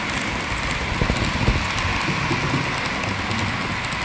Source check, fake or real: real